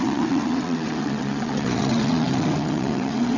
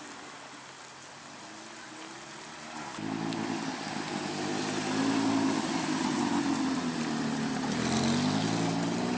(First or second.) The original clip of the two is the second